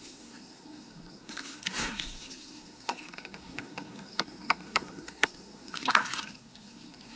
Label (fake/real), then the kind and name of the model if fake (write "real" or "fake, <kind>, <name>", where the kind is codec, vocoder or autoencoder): fake, codec, SNAC